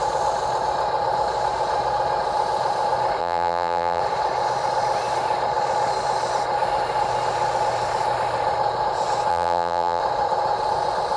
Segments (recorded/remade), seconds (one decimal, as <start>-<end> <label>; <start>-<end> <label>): 0.0-3.2 recorded; 3.2-4.0 remade; 4.0-9.3 recorded; 9.3-10.0 remade; 10.0-11.2 recorded